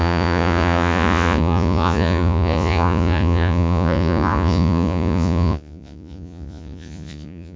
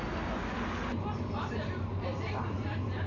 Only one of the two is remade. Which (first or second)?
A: first